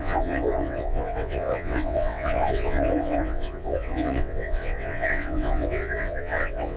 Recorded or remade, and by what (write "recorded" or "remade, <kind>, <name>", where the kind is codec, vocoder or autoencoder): remade, vocoder, WaveNeXt